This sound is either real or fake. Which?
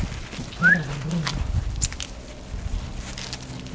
real